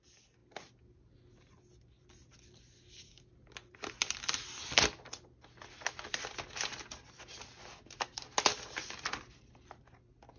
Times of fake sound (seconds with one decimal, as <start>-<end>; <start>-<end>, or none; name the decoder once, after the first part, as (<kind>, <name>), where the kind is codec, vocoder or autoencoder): none